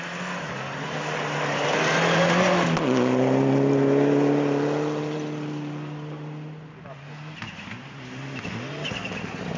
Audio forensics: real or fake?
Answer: real